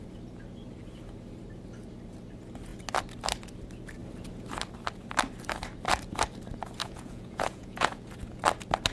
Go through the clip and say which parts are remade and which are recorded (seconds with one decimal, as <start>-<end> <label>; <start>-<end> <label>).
0.0-6.8 recorded; 6.8-8.0 remade; 8.0-8.9 recorded